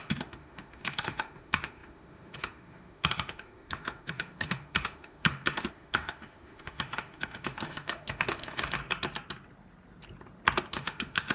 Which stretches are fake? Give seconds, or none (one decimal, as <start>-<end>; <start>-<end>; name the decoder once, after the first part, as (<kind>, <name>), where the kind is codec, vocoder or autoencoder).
0.0-8.8 (autoencoder, DAC-VAE); 10.7-11.3

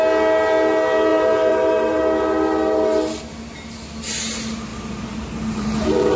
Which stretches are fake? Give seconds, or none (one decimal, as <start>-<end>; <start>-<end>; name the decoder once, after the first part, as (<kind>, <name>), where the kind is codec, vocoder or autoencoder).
1.1-2.0 (vocoder, BigVGAN v2); 4.7-6.2

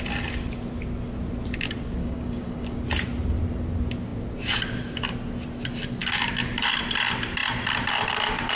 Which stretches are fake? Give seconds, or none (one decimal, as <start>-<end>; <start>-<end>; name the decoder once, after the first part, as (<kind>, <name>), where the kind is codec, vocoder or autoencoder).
2.0-2.8 (codec, DAC)

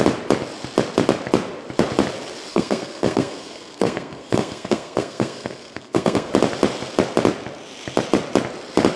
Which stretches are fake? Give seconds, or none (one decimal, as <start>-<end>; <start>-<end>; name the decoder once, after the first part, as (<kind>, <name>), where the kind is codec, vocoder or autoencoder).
2.5-6.3 (codec, SNAC)

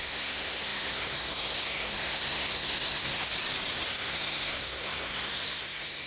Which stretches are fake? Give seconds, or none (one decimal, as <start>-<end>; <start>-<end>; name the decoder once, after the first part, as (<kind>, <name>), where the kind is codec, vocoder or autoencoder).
0.0-3.3 (codec, SNAC); 3.9-6.1

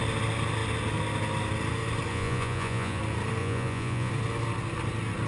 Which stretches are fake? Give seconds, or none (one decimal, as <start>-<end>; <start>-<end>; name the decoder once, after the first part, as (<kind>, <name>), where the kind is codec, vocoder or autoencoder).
2.1-3.0 (vocoder, Vocos); 3.4-4.1

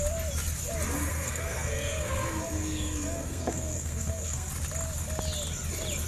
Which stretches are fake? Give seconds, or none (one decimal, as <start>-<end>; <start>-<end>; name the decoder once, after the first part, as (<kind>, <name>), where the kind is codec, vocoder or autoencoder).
1.1-4.5 (codec, SNAC)